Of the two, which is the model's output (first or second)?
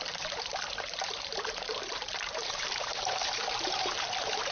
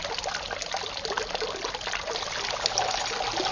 first